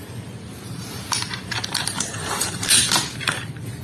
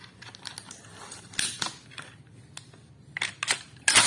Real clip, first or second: second